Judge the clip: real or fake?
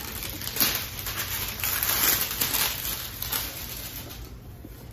real